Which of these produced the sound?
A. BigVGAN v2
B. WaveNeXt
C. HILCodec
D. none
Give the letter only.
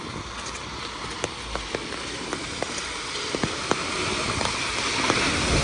D